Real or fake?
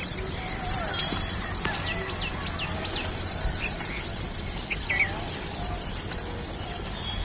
fake